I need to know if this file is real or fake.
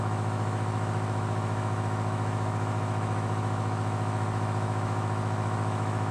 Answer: fake